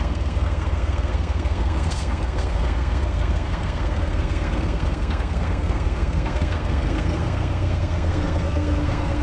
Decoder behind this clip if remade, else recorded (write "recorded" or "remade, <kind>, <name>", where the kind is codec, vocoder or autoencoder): remade, codec, SNAC